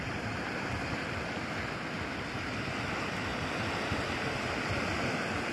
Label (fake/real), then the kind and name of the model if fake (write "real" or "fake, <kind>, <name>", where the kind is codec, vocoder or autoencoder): real